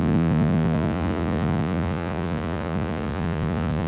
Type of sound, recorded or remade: remade